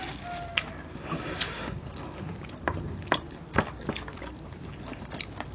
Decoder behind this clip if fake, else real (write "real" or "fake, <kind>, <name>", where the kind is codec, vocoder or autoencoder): real